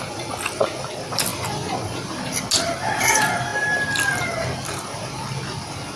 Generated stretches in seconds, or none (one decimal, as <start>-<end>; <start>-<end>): none